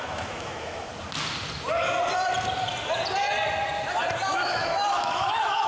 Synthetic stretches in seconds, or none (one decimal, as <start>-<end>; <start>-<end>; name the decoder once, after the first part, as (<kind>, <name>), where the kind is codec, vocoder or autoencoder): 0.0-0.9 (autoencoder, DAC-VAE); 4.3-5.7